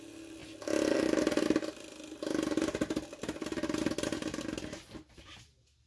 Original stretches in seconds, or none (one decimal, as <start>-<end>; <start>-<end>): 0.0-5.9